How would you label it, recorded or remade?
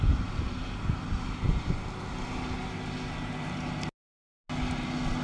recorded